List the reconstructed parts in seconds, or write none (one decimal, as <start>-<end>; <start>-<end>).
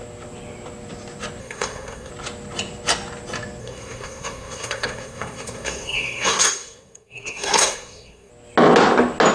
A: 1.4-2.1; 3.6-8.3